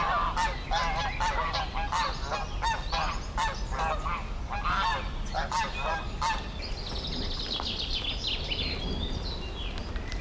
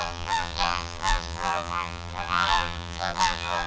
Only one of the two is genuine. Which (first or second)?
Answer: first